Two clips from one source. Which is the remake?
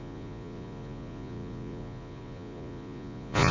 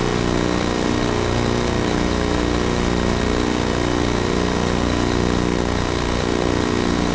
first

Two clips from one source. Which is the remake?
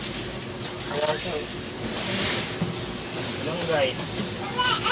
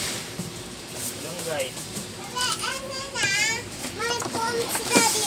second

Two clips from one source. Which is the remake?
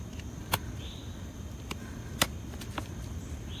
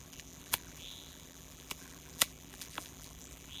second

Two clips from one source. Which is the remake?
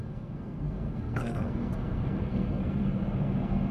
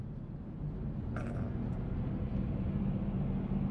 first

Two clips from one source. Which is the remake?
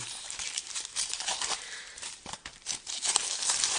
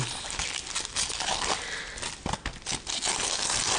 first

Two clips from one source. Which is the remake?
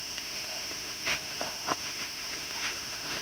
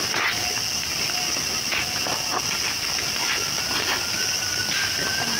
first